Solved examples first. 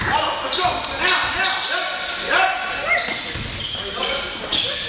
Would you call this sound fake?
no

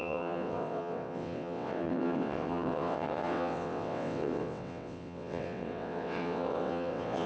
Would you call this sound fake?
yes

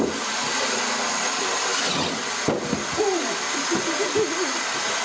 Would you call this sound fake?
no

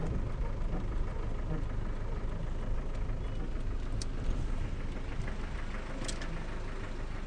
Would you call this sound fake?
no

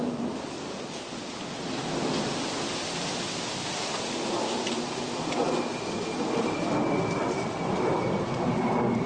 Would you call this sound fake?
no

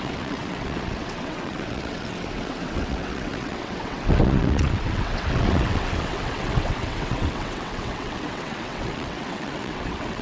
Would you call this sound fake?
yes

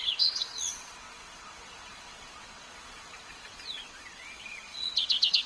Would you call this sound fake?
yes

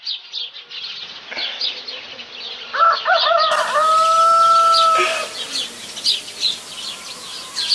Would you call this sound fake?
no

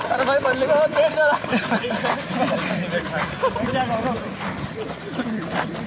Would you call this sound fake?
no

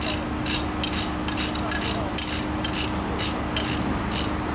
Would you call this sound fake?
no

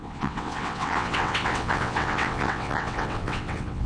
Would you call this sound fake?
yes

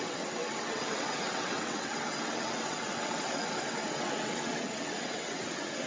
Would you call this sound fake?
yes